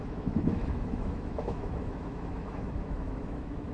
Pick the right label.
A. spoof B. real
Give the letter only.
A